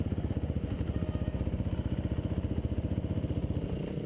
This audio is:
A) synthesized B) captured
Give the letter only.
B